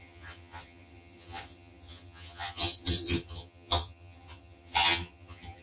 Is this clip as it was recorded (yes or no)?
no